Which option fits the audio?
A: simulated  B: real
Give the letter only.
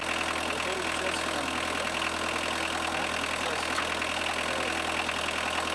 B